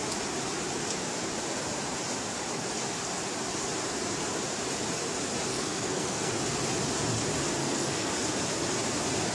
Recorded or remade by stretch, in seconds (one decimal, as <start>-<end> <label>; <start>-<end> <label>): 0.0-5.5 recorded; 5.5-6.3 remade; 6.3-7.6 recorded; 7.6-8.1 remade; 8.1-9.3 recorded

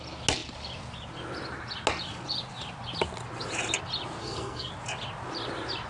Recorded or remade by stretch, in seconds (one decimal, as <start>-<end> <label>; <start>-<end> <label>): 0.0-4.2 recorded; 4.2-4.7 remade; 4.7-5.9 recorded

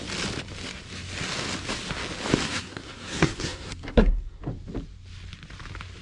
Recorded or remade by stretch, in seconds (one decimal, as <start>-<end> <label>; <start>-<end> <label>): 0.0-2.4 recorded; 2.4-4.4 remade; 4.4-6.0 recorded

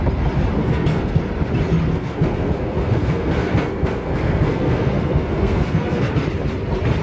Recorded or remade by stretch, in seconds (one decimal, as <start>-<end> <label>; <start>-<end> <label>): 0.0-0.6 recorded; 0.6-1.2 remade; 1.2-1.9 recorded; 1.9-6.1 remade; 6.1-7.0 recorded